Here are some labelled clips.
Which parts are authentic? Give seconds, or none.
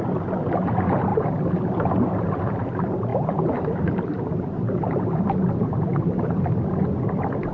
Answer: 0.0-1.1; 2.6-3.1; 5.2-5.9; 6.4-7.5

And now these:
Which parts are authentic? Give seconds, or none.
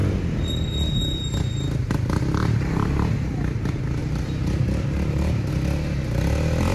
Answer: 0.0-4.0; 5.5-6.7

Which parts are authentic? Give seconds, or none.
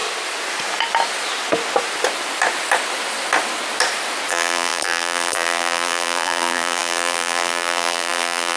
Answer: 0.0-4.3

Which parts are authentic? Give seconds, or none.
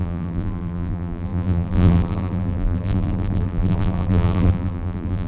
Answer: none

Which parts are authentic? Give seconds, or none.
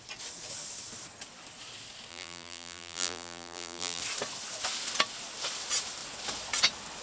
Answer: 0.0-2.1; 4.0-7.0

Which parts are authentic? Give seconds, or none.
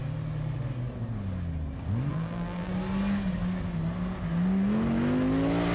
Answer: 0.0-2.1; 2.7-5.7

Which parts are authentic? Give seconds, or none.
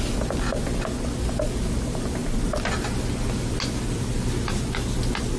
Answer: 0.0-5.4